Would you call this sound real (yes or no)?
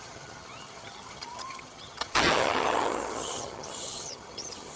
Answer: no